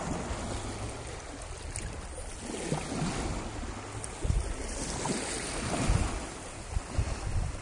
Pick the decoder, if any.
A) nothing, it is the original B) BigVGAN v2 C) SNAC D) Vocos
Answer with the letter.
A